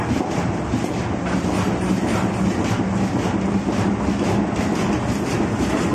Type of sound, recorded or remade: recorded